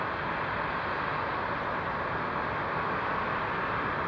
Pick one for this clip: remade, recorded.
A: recorded